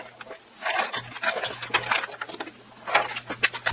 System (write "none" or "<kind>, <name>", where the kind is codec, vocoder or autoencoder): none